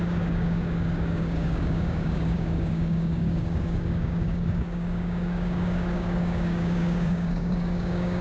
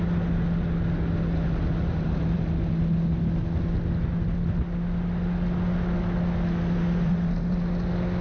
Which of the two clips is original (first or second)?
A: second